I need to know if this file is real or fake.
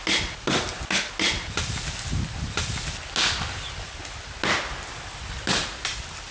real